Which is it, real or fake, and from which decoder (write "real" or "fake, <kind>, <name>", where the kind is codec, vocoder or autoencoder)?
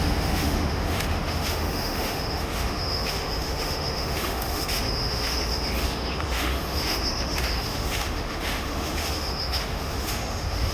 fake, autoencoder, DAC-VAE